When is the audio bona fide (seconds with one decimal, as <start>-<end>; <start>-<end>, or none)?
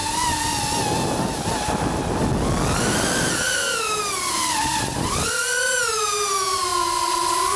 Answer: 0.0-7.6